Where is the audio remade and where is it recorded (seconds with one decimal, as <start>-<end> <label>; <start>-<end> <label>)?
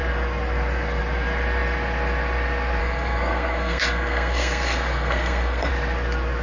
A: 0.0-2.8 recorded; 2.8-5.7 remade; 5.7-6.4 recorded